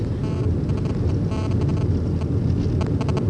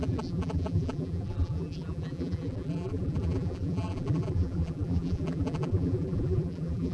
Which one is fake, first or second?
second